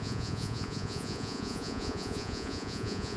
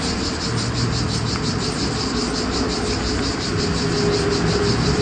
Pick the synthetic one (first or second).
first